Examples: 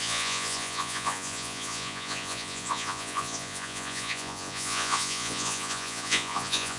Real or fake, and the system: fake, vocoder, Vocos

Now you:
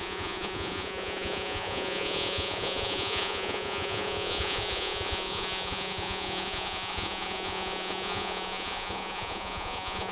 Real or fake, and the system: fake, vocoder, Vocos